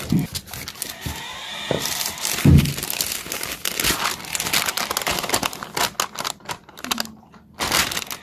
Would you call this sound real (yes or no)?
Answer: yes